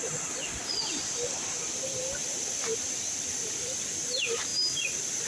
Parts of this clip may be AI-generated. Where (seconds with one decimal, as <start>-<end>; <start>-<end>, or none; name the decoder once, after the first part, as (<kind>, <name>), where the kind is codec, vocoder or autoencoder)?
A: 2.7-3.8 (vocoder, BigVGAN v2)